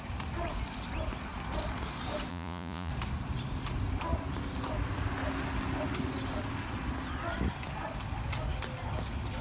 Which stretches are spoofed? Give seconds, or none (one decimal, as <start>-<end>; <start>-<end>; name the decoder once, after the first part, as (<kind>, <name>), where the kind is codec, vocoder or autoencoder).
2.3-2.9 (vocoder, Vocos)